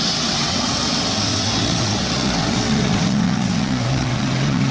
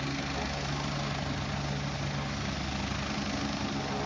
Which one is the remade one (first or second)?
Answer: first